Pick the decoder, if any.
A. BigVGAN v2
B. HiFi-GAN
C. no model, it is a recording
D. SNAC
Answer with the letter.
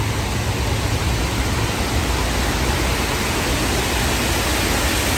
C